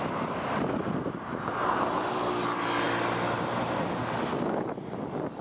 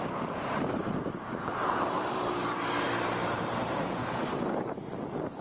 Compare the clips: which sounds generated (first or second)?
second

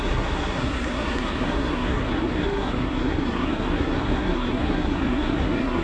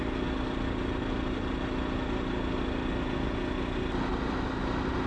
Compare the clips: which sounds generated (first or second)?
first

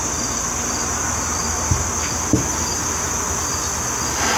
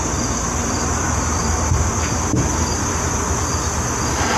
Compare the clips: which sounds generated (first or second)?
second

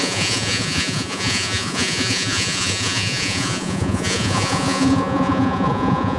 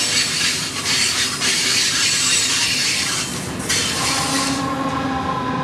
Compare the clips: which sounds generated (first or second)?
first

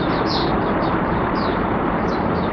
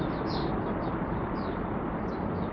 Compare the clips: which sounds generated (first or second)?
first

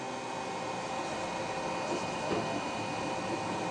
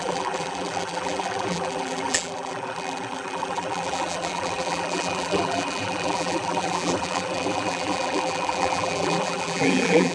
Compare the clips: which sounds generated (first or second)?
second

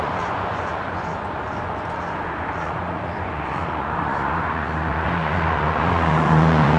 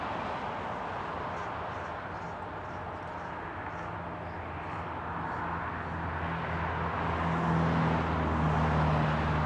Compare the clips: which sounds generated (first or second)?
first